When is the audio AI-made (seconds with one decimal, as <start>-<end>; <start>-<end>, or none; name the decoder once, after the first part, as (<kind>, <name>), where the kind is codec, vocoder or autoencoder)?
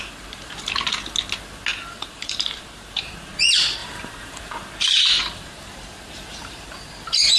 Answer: 1.7-3.3 (vocoder, BigVGAN v2); 3.8-6.9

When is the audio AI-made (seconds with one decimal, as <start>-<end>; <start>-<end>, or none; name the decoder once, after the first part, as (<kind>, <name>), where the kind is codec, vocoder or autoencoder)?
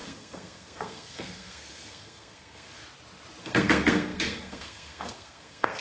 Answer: 0.0-2.8 (codec, SNAC); 3.4-5.8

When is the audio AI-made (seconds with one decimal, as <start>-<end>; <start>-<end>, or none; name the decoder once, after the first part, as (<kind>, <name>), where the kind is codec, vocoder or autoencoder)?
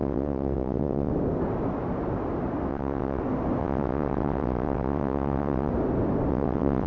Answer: 0.0-1.1 (vocoder, WaveNeXt); 2.7-3.2; 3.6-5.7; 6.3-6.9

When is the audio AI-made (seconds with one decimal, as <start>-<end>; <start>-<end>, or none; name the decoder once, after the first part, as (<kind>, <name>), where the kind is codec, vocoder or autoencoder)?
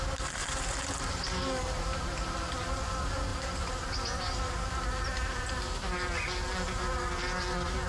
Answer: 0.4-2.0 (vocoder, BigVGAN v2)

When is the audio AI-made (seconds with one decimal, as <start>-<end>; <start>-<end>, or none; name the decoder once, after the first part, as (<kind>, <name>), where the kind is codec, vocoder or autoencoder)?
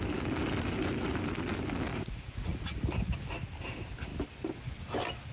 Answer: 1.9-2.8 (vocoder, Vocos)